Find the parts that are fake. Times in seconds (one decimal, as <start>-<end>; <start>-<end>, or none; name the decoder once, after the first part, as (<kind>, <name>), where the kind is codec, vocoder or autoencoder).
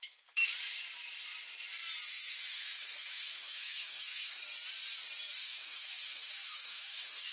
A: 0.0-0.4 (autoencoder, DAC-VAE); 2.1-4.4; 5.4-7.3